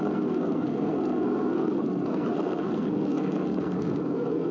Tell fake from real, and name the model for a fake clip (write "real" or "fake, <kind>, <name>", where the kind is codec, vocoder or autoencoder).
fake, codec, SNAC